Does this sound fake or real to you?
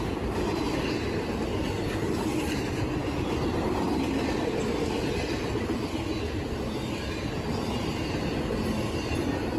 real